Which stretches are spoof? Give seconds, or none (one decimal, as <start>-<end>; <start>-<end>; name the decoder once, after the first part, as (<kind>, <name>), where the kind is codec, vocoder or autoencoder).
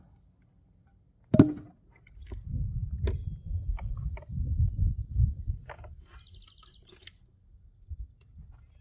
none